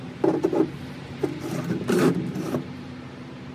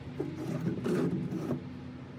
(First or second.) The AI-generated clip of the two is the first